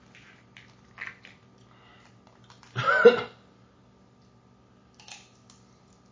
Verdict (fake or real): real